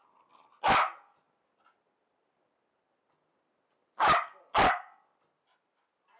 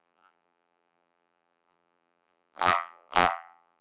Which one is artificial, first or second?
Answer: second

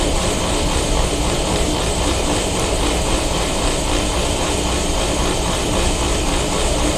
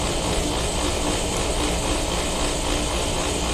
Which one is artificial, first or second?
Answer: first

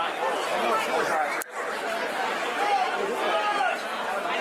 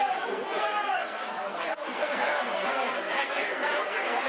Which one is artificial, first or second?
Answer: second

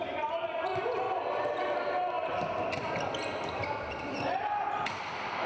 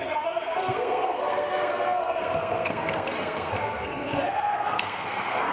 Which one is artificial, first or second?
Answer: second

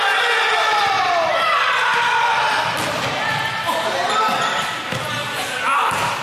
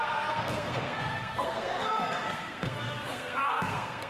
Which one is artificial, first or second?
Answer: second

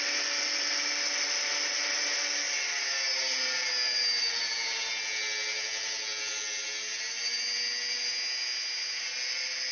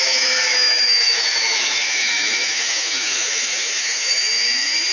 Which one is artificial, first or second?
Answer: second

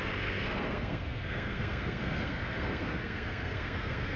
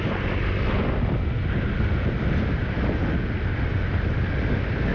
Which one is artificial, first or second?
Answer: first